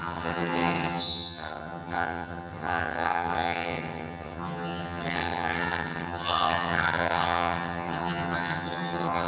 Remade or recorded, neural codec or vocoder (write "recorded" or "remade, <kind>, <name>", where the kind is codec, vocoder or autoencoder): remade, vocoder, HiFi-GAN